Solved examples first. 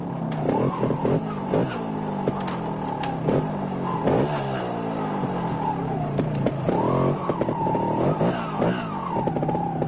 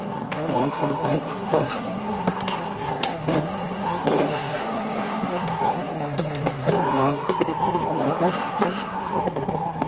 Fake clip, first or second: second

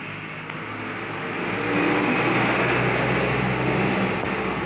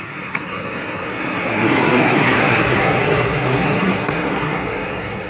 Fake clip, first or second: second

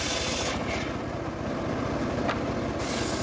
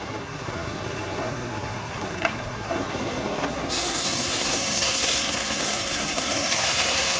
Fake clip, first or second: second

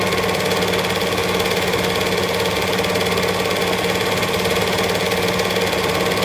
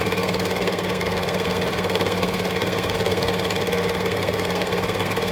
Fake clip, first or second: second